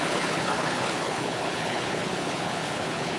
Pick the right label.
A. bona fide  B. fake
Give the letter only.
B